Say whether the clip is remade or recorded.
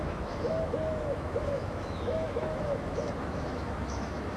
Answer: remade